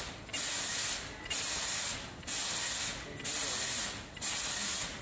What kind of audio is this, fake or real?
real